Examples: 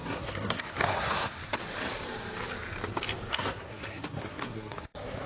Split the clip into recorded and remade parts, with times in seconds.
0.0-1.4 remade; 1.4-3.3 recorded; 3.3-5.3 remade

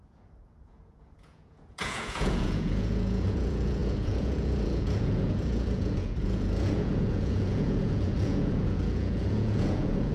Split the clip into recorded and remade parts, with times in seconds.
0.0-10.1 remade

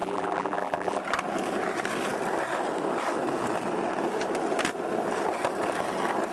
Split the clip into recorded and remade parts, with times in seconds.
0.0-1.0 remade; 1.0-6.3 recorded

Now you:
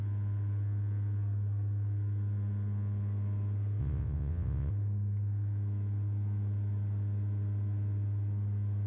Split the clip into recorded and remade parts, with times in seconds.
0.0-3.8 recorded; 3.8-4.7 remade; 4.7-8.9 recorded

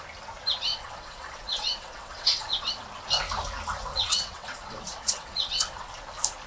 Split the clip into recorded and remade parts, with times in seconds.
0.0-0.7 recorded; 0.7-2.7 remade; 2.7-3.9 recorded; 3.9-5.9 remade; 5.9-6.5 recorded

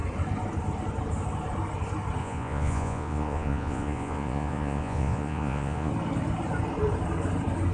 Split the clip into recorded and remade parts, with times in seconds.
0.0-2.2 recorded; 2.2-5.9 remade; 5.9-7.7 recorded